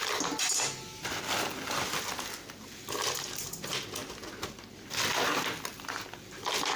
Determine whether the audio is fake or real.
real